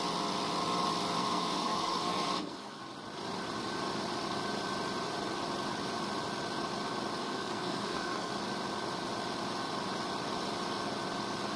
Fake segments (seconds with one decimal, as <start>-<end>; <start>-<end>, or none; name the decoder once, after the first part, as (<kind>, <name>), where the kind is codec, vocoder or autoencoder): 1.2-2.8 (codec, SNAC); 7.2-8.3